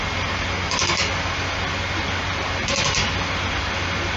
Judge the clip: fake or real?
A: real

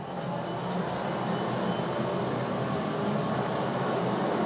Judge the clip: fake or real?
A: real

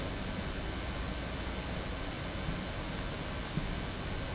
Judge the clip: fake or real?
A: real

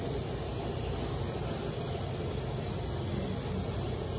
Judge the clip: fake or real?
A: real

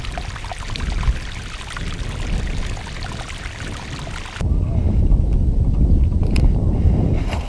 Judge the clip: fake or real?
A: real